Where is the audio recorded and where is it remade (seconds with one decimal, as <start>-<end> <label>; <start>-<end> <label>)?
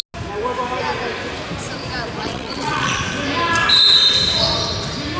0.0-2.2 recorded; 2.2-3.0 remade; 3.0-5.2 recorded